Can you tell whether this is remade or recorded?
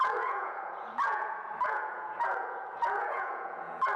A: remade